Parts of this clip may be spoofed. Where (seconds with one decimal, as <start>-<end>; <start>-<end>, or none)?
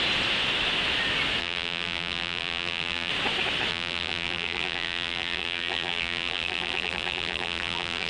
1.4-3.1; 3.7-8.1